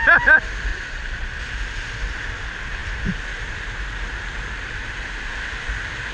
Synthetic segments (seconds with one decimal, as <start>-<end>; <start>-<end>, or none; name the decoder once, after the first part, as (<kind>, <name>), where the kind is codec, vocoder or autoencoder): 0.7-1.4 (vocoder, Vocos)

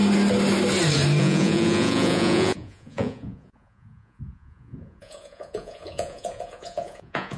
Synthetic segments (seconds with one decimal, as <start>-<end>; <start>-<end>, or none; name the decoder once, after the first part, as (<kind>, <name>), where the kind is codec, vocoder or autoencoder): 1.2-7.4 (vocoder, Vocos)

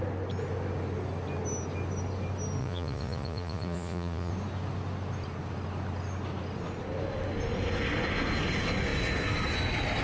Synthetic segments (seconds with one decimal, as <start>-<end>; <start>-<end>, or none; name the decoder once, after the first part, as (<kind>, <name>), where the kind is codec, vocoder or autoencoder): 2.6-4.3 (vocoder, Vocos)

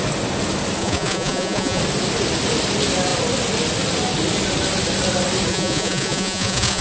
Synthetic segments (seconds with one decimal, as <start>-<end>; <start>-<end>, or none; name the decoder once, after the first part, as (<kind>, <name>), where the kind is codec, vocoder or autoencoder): 0.8-1.8 (vocoder, Vocos); 5.5-6.8

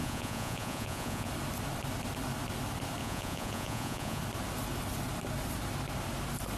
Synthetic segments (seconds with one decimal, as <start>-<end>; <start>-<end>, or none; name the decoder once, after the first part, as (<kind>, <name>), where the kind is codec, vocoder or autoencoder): 0.0-1.3 (vocoder, Vocos); 3.0-4.2

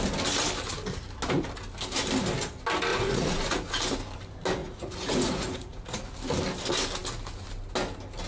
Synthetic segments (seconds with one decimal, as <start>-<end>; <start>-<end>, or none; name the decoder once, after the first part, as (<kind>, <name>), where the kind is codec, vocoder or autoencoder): 2.9-3.7 (vocoder, Vocos); 4.6-6.0

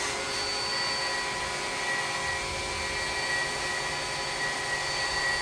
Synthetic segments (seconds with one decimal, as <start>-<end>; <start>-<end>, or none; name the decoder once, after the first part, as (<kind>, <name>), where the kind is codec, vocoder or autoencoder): none